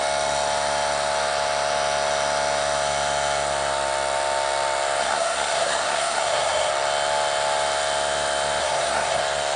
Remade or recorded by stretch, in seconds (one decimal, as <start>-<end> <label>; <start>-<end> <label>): 0.0-5.0 recorded; 5.0-6.7 remade; 6.7-8.6 recorded; 8.6-9.2 remade; 9.2-9.6 recorded